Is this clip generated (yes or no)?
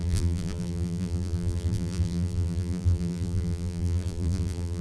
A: yes